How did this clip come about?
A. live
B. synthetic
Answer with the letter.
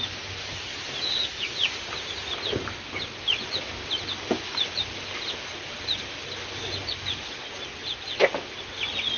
A